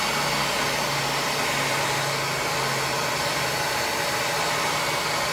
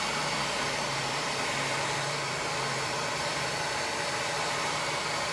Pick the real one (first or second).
first